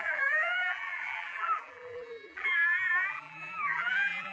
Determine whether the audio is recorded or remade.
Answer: remade